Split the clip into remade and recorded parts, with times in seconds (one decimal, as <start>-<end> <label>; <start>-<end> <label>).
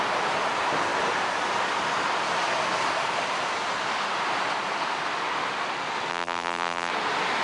0.0-6.1 recorded; 6.1-6.9 remade; 6.9-7.4 recorded